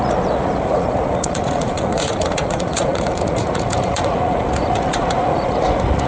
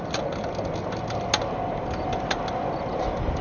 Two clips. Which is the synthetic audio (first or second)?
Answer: first